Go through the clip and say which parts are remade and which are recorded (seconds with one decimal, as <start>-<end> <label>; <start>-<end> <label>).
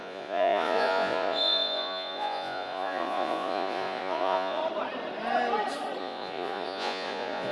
0.0-4.6 remade; 4.6-6.0 recorded; 6.0-7.5 remade